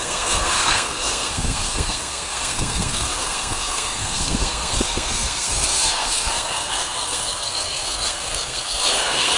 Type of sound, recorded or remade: remade